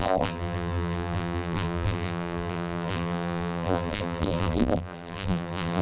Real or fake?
fake